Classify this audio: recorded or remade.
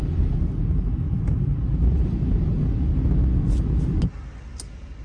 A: recorded